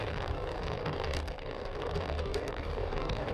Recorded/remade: remade